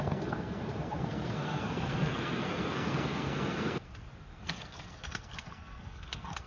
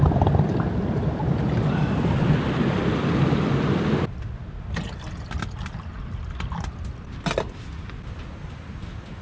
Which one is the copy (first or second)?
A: first